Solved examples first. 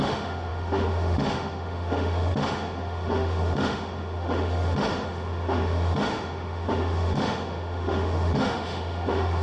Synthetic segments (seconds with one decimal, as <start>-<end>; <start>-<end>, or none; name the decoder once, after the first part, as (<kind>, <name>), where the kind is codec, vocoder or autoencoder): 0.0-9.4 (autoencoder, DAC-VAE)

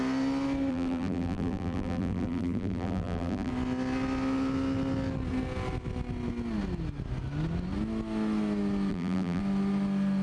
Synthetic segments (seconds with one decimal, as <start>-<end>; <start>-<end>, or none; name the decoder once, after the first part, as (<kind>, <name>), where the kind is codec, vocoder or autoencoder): 0.7-3.5 (vocoder, BigVGAN v2); 8.9-9.4

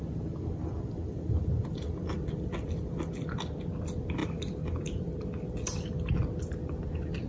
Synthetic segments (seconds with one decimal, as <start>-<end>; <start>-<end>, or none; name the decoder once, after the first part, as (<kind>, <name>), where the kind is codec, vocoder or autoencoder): 0.0-3.1 (vocoder, BigVGAN v2); 4.2-4.8

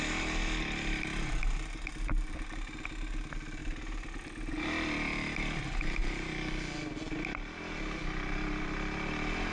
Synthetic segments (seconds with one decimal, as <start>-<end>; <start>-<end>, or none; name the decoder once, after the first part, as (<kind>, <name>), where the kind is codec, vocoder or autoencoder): 3.6-6.0 (vocoder, BigVGAN v2)

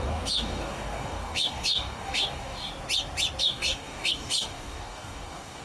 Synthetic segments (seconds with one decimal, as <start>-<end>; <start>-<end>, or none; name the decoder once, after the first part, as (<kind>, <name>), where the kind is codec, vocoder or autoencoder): 0.0-2.7 (codec, DAC); 3.4-5.6

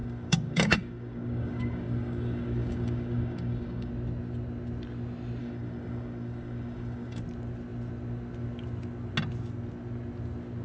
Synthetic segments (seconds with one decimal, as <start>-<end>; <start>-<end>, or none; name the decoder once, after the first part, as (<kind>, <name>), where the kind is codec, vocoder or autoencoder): 0.0-3.9 (codec, DAC); 5.4-7.2

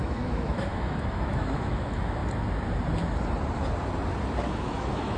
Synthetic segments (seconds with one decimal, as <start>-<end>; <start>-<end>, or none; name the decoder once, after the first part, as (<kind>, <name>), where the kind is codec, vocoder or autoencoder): 0.0-2.2 (autoencoder, DAC-VAE); 4.5-5.2